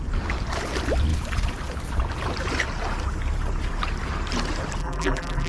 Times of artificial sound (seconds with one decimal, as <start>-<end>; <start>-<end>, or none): 4.8-5.5